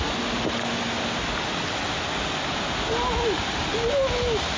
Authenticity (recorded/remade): recorded